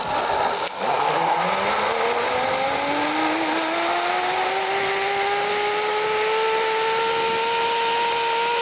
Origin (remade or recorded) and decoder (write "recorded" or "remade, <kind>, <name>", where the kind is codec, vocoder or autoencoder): recorded